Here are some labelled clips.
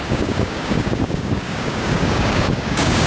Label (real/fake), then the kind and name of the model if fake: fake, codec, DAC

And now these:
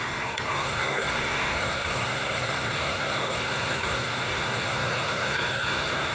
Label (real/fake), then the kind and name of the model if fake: fake, codec, SNAC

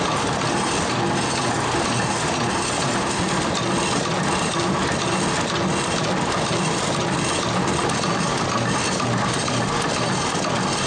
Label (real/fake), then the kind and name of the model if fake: real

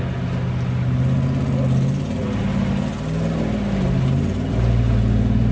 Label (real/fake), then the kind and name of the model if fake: real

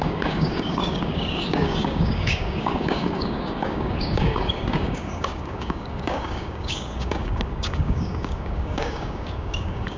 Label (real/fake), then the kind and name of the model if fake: fake, codec, DAC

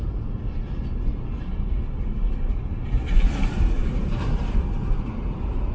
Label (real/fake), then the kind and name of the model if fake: real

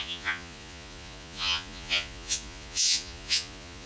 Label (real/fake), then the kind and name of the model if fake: fake, vocoder, Vocos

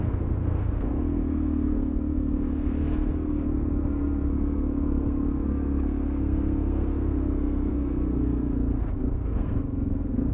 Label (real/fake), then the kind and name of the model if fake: fake, codec, SNAC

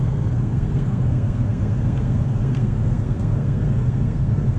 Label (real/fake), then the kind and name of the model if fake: fake, codec, SNAC